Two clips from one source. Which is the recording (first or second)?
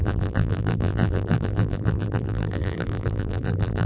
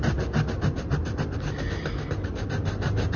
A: second